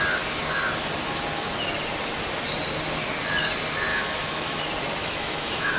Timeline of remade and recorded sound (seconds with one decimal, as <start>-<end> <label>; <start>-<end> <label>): 0.0-3.9 recorded; 3.9-4.6 remade; 4.6-5.0 recorded; 5.0-5.8 remade